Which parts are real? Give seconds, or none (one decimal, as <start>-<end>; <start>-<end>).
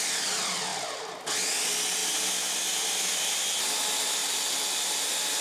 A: 0.0-4.2; 4.9-5.4